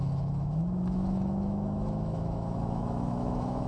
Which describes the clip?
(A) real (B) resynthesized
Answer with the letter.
B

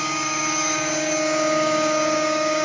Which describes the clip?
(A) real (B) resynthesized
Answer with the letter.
B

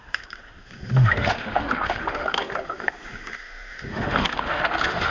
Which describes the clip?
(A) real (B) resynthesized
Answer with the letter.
B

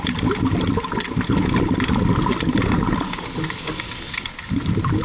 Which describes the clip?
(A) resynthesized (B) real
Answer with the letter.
B